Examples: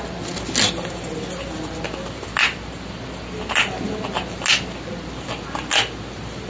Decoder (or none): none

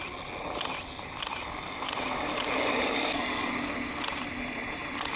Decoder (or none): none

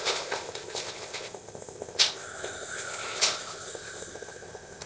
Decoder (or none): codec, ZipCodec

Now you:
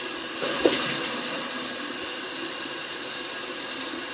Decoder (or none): none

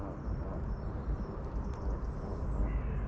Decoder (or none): none